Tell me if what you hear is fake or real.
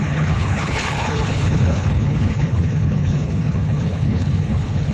fake